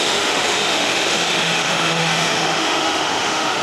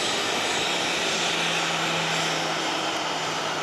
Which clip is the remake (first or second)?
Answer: first